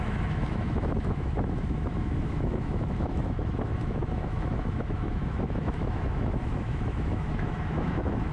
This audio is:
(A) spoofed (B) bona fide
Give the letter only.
A